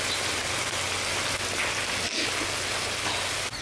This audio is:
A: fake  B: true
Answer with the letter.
B